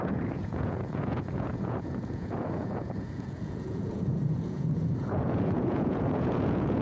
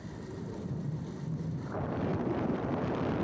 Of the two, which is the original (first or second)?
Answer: second